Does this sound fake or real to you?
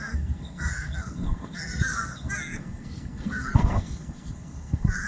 fake